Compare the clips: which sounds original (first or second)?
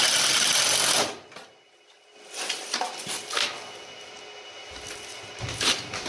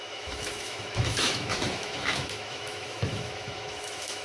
first